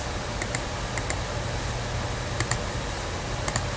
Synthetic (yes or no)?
no